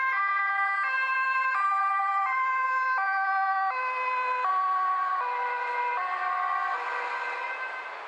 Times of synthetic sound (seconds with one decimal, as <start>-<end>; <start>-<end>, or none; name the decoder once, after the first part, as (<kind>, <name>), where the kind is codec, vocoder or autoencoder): none